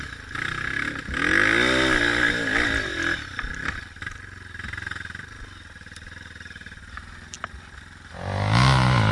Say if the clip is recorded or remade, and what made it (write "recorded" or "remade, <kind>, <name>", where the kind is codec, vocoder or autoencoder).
recorded